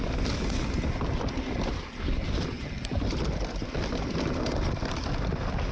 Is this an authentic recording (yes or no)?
yes